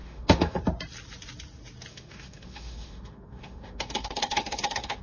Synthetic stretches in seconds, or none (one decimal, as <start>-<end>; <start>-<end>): 0.0-0.6; 1.9-5.0